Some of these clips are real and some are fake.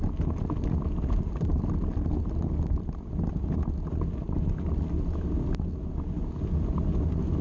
real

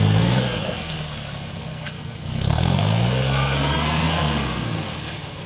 fake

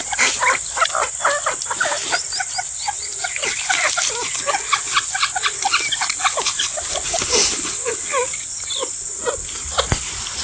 real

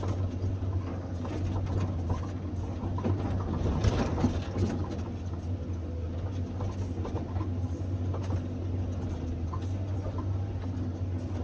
real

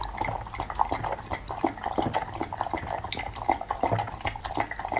real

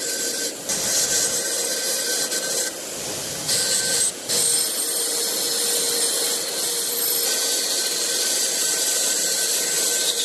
real